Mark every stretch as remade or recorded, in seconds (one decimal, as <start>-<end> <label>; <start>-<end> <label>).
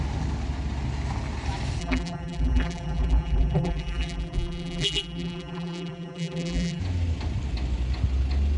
0.0-1.8 recorded; 1.8-6.8 remade; 6.8-8.6 recorded